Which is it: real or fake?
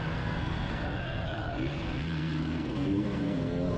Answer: fake